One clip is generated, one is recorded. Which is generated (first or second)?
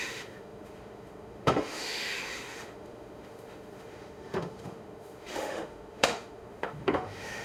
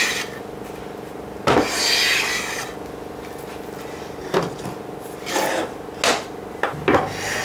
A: first